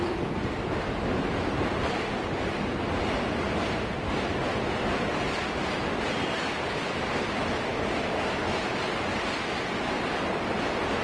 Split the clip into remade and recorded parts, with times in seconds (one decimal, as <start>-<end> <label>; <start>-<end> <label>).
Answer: 0.0-7.7 recorded; 7.7-8.7 remade; 8.7-11.0 recorded